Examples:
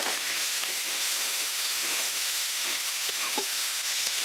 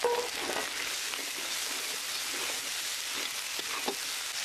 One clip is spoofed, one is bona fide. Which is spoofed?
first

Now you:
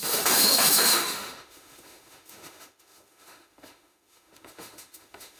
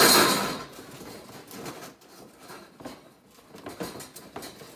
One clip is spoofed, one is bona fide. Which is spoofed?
first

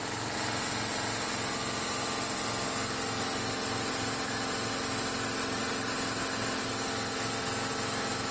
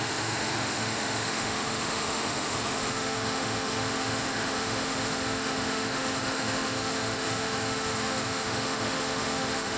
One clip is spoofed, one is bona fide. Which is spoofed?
second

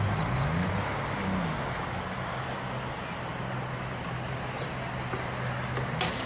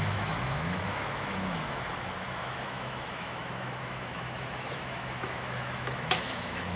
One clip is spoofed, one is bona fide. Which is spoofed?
second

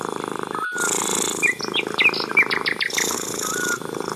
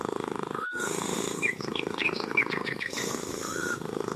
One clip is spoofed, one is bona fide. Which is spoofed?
second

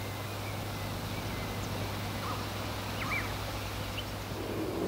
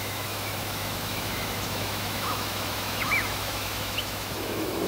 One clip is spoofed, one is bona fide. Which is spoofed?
second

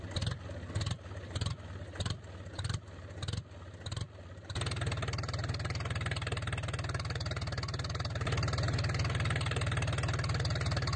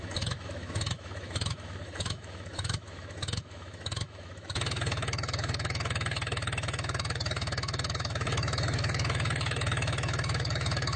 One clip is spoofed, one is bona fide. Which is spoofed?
second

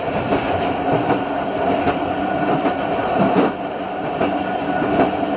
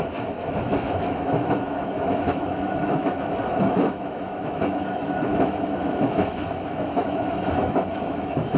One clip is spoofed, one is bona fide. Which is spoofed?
second